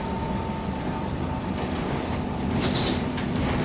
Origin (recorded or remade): recorded